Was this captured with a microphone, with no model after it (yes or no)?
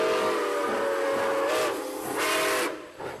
yes